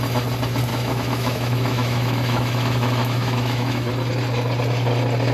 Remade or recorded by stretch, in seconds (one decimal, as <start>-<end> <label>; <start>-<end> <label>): 0.0-0.7 recorded; 0.7-3.9 remade; 3.9-5.3 recorded